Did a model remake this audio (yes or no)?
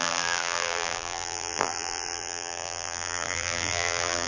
yes